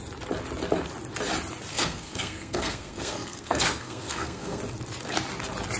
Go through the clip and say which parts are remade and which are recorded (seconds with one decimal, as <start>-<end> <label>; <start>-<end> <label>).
0.0-1.7 recorded; 1.7-4.6 remade; 4.6-5.8 recorded